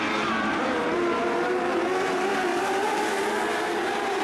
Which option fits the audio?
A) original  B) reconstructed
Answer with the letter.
B